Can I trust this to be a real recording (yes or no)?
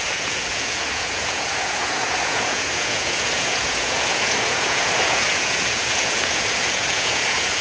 no